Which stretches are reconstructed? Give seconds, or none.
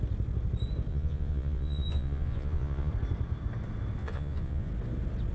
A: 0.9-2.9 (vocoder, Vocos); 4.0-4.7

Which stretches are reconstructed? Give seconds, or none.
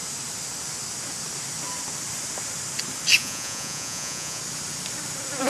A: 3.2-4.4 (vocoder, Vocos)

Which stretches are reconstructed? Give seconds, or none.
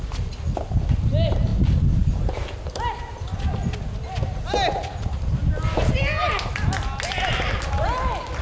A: none